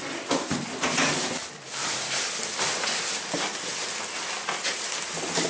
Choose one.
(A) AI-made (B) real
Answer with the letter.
B